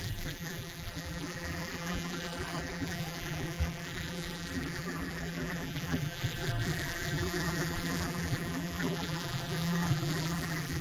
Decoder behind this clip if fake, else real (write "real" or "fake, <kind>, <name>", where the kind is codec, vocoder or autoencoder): fake, vocoder, BigVGAN v2